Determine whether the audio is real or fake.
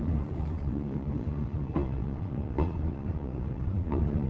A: fake